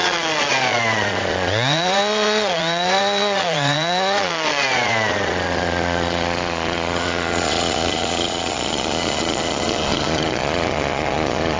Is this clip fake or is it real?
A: fake